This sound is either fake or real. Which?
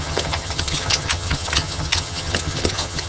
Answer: fake